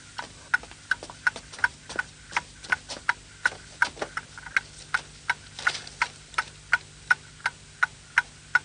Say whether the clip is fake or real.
real